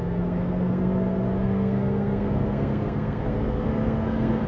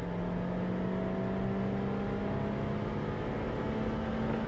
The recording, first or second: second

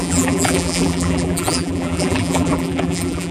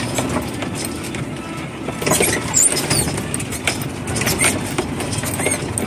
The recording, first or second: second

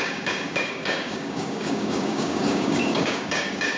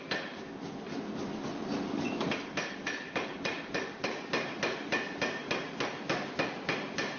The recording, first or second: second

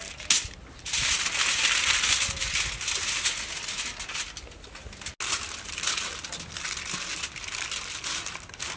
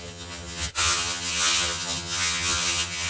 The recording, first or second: first